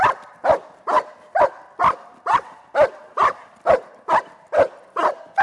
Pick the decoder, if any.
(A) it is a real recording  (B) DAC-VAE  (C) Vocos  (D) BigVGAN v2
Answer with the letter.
A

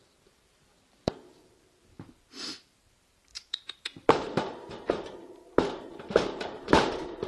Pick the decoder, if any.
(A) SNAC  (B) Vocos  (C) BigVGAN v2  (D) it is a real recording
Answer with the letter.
C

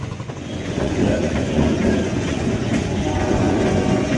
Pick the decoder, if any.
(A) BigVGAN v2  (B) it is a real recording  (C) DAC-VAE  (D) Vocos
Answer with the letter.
D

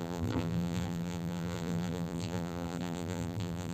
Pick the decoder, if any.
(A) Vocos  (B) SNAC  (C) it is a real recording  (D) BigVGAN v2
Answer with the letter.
D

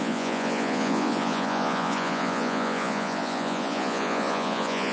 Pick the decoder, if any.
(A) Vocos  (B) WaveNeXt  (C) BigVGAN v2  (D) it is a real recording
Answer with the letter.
A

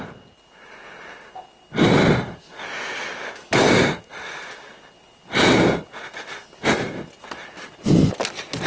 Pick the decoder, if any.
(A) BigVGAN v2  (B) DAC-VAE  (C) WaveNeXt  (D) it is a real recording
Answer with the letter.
D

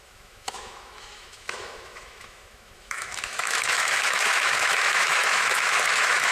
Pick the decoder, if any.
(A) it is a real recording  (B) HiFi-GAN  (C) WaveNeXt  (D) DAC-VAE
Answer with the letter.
D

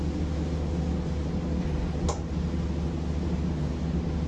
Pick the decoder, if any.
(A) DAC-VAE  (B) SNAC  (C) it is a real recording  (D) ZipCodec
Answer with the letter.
C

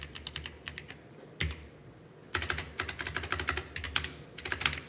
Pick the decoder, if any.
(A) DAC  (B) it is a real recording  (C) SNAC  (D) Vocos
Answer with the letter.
B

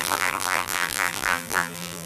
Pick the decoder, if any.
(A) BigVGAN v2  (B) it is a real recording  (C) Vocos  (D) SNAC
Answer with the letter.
A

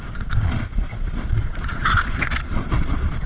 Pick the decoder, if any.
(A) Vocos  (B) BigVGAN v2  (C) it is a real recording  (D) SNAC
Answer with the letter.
A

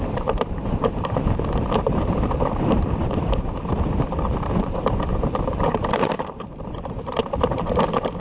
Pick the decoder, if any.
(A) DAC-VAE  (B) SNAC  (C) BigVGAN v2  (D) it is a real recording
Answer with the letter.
C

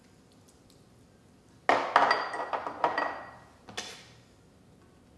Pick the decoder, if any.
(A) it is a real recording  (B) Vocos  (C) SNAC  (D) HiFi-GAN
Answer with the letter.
A